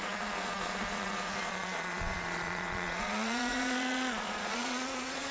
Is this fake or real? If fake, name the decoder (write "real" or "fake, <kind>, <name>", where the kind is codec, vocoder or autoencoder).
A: fake, vocoder, Vocos